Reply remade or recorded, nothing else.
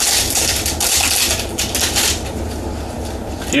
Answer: recorded